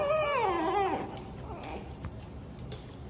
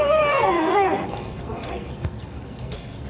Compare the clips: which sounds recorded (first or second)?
first